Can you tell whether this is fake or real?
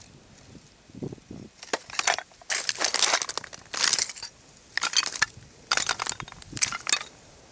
real